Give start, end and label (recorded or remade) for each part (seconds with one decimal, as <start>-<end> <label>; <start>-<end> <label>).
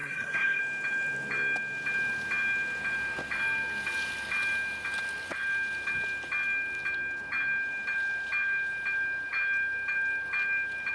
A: 0.0-0.6 remade; 0.6-10.9 recorded